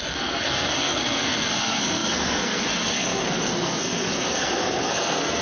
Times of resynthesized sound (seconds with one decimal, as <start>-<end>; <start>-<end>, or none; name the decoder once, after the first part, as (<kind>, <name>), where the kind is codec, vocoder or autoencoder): 0.0-5.4 (codec, SNAC)